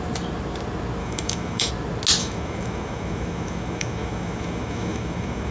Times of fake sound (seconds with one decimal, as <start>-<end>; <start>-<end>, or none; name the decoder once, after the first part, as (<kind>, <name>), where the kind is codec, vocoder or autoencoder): 1.0-1.7 (autoencoder, DAC-VAE); 2.2-5.5